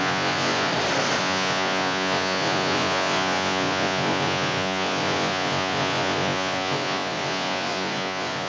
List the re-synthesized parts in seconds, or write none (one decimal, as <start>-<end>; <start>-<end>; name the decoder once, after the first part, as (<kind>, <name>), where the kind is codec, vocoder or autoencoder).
0.0-0.7 (vocoder, Vocos); 1.2-8.5